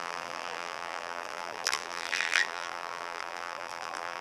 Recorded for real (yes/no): no